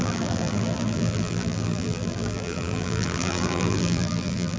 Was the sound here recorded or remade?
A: remade